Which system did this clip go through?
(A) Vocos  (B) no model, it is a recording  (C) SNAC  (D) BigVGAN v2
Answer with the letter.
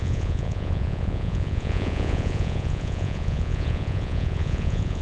A